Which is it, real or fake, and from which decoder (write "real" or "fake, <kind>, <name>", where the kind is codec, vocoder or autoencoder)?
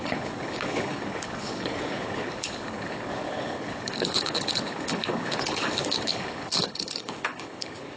fake, codec, HILCodec